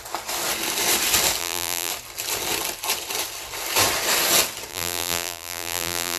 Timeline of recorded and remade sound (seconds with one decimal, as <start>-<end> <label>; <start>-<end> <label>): 0.0-1.4 recorded; 1.4-1.9 remade; 1.9-4.7 recorded; 4.7-6.2 remade